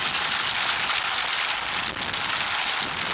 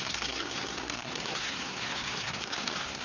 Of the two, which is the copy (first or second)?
second